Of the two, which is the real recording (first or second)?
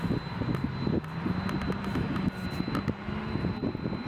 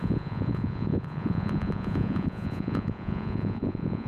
first